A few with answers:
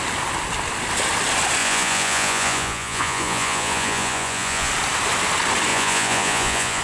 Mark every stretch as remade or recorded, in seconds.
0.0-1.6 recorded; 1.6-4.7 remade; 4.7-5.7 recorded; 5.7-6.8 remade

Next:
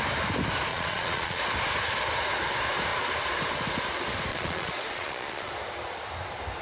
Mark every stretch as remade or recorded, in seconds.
0.0-0.7 recorded; 0.7-1.4 remade; 1.4-4.3 recorded; 4.3-5.5 remade; 5.5-6.6 recorded

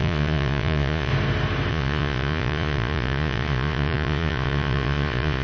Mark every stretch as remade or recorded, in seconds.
0.0-1.1 remade; 1.1-1.7 recorded; 1.7-5.4 remade

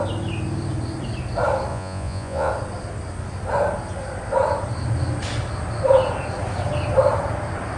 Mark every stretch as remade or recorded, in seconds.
0.0-1.7 recorded; 1.7-2.5 remade; 2.5-7.8 recorded

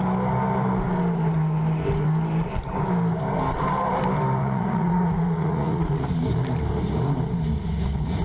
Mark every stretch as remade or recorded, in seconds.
0.0-4.4 recorded; 4.4-6.1 remade; 6.1-8.2 recorded

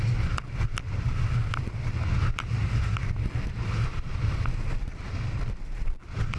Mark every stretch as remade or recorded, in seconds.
0.0-6.4 recorded

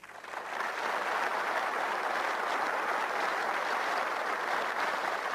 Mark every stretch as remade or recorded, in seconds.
0.0-5.3 recorded